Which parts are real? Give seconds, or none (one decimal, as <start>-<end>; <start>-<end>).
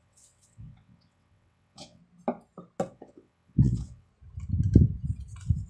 2.0-2.9; 4.1-5.7